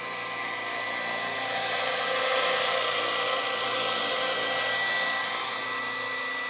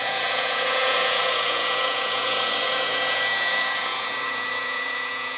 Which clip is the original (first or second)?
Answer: first